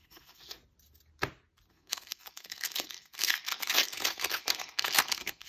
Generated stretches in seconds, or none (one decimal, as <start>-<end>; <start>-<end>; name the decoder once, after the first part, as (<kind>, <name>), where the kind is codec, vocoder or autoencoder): 0.0-0.6 (codec, SNAC); 1.7-5.5